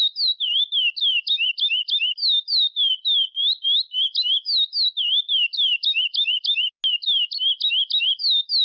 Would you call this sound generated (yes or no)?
no